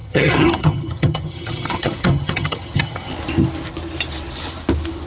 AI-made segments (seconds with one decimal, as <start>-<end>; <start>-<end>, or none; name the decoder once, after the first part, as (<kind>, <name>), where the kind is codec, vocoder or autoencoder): 0.0-3.1 (vocoder, HiFi-GAN)